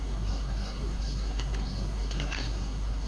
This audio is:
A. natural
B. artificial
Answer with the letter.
B